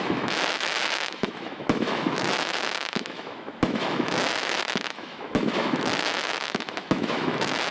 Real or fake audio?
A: fake